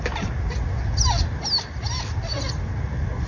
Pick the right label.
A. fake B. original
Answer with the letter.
B